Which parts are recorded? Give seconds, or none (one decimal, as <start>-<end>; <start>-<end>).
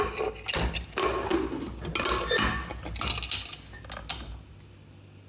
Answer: 0.0-5.3